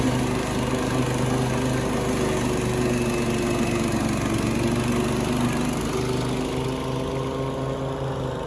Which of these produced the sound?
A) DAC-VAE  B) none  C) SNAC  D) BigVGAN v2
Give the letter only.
B